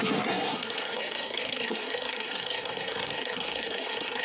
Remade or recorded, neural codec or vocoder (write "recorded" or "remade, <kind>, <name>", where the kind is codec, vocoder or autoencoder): remade, codec, SNAC